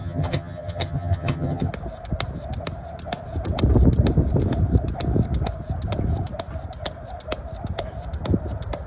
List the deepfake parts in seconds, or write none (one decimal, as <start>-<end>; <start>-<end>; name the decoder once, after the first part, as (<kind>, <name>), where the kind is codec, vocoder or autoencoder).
0.0-1.7 (vocoder, HiFi-GAN)

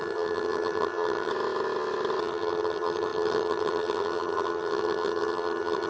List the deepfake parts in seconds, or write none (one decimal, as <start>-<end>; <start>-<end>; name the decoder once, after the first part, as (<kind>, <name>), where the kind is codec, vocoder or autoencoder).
0.0-1.3 (vocoder, HiFi-GAN); 2.2-5.9

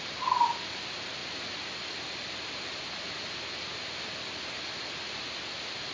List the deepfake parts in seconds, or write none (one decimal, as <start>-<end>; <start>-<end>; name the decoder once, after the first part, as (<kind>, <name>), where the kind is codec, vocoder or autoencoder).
none

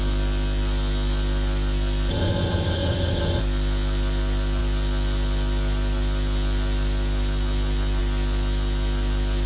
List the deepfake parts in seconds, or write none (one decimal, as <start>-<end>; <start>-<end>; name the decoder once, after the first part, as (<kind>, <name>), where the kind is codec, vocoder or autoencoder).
2.1-3.4 (vocoder, HiFi-GAN)

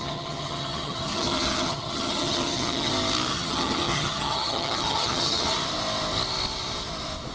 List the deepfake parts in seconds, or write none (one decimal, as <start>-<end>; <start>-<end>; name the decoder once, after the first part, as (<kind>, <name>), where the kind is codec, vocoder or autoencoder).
0.0-2.9 (vocoder, HiFi-GAN); 3.3-5.5